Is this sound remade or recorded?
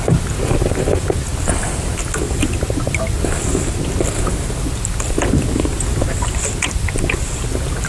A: recorded